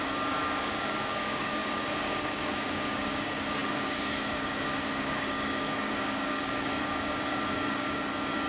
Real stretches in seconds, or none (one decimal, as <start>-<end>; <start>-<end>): none